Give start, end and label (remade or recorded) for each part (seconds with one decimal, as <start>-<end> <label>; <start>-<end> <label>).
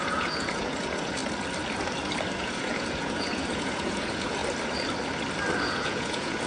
0.0-1.2 remade; 1.2-2.4 recorded; 2.4-4.4 remade; 4.4-5.6 recorded; 5.6-6.5 remade